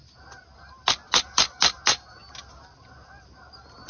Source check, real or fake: real